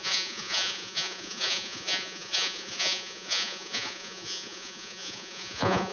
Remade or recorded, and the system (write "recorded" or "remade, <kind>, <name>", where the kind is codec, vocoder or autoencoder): remade, vocoder, Vocos